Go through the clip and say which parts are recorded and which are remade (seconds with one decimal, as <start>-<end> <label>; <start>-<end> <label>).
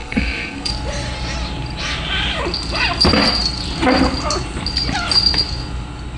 0.0-0.7 remade; 0.7-6.2 recorded